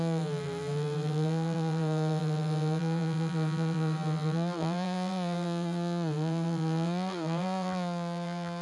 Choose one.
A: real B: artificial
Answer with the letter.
B